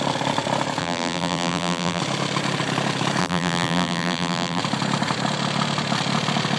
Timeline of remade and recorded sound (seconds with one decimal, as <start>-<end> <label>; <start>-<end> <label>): 0.0-0.8 recorded; 0.8-2.0 remade; 2.0-3.2 recorded; 3.2-4.6 remade; 4.6-6.6 recorded